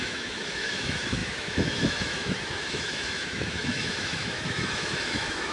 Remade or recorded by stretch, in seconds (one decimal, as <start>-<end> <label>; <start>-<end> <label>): 0.0-5.5 remade

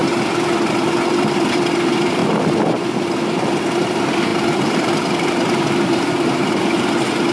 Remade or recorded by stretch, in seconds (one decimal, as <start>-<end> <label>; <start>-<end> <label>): 0.0-0.7 recorded; 0.7-2.2 remade; 2.2-3.8 recorded; 3.8-7.3 remade

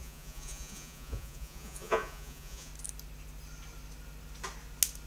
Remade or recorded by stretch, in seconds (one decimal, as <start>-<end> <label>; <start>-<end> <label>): 0.0-2.7 remade; 2.7-5.1 recorded

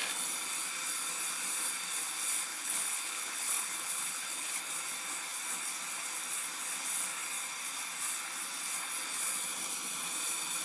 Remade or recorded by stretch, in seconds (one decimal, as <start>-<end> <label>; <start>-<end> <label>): 0.0-2.5 recorded; 2.5-4.6 remade; 4.6-10.6 recorded